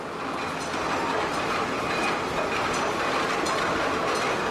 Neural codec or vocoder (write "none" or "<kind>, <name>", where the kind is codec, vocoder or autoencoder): none